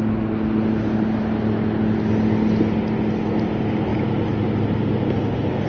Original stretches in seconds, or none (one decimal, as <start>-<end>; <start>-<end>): 0.0-5.7